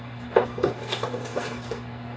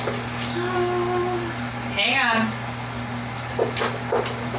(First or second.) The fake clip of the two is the first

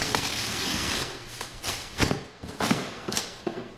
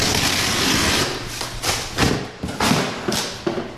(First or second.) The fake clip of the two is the first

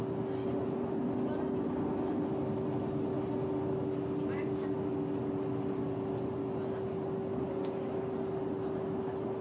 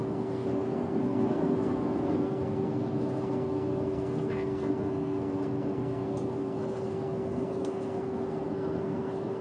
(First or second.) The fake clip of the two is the second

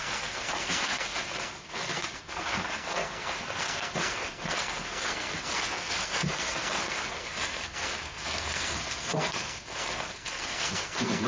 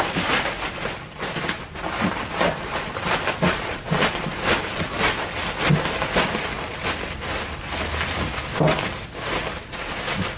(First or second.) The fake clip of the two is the first